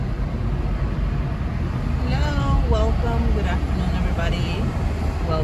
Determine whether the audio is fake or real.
real